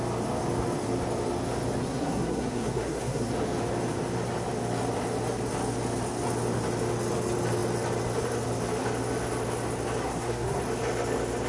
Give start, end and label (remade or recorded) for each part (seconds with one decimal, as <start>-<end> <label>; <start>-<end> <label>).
0.0-1.8 recorded; 1.8-3.3 remade; 3.3-10.0 recorded; 10.0-10.6 remade; 10.6-11.5 recorded